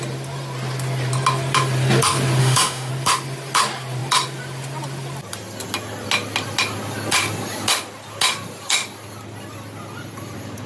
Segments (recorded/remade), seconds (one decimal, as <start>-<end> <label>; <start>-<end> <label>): 0.0-2.4 recorded; 2.4-2.9 remade; 2.9-10.7 recorded